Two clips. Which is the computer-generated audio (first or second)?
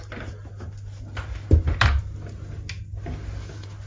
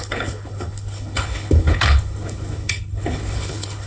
second